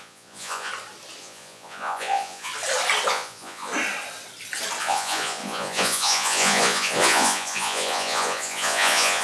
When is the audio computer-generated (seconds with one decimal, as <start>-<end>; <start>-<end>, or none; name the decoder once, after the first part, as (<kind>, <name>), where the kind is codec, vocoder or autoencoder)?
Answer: 0.0-0.7 (vocoder, Vocos); 1.2-2.5; 3.1-3.7; 4.8-9.2